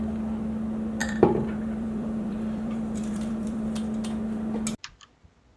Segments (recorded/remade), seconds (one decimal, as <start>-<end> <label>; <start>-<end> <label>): 0.0-1.0 recorded; 1.0-3.8 remade; 3.8-5.6 recorded